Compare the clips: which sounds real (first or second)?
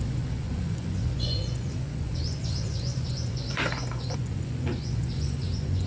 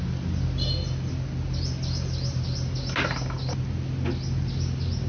second